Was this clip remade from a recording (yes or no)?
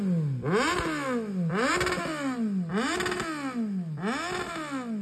no